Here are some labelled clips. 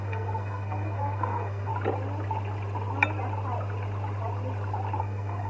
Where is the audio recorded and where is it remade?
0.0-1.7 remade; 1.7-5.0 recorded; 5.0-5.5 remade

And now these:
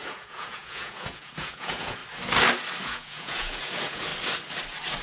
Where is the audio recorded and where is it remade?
0.0-2.0 remade; 2.0-2.8 recorded; 2.8-4.1 remade; 4.1-5.0 recorded

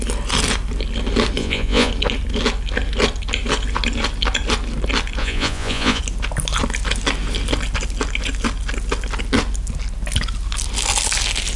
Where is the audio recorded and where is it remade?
0.0-1.4 recorded; 1.4-1.9 remade; 1.9-5.2 recorded; 5.2-6.0 remade; 6.0-11.6 recorded

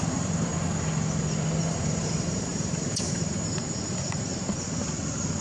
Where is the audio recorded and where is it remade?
0.0-0.5 remade; 0.5-1.6 recorded; 1.6-4.3 remade; 4.3-5.4 recorded

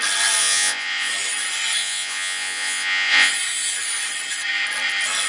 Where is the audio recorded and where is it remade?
0.0-0.4 recorded; 0.4-1.1 remade; 1.1-1.8 recorded; 1.8-3.3 remade; 3.3-5.3 recorded